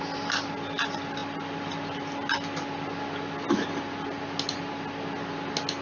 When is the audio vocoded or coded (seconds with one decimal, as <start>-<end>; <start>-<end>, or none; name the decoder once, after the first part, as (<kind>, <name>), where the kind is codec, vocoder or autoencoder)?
none